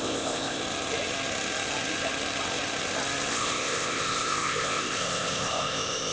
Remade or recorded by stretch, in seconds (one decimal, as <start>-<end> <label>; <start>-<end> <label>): 0.0-0.6 remade; 0.6-3.3 recorded; 3.3-6.1 remade